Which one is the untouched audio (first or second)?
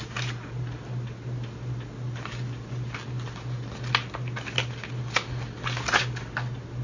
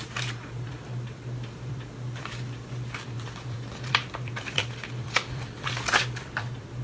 first